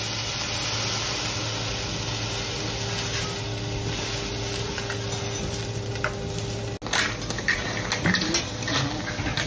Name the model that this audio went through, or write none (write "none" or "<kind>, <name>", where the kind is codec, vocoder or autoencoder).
none